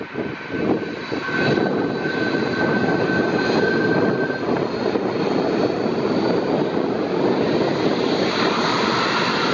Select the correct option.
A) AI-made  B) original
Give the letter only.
B